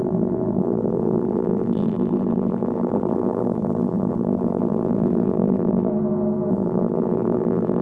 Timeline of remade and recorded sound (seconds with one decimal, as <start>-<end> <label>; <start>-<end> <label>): 0.0-5.9 remade; 5.9-6.5 recorded; 6.5-7.8 remade